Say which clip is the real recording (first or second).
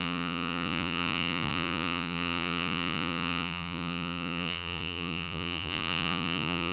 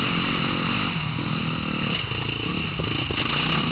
second